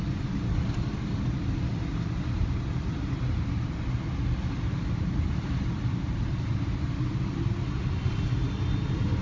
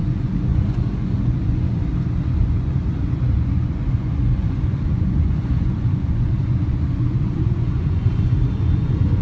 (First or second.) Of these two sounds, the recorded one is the first